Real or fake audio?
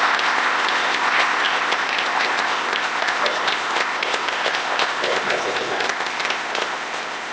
fake